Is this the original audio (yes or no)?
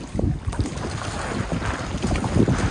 yes